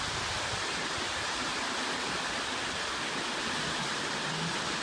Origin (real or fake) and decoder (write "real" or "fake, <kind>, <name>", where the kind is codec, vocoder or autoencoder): real